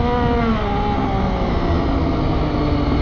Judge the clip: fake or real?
real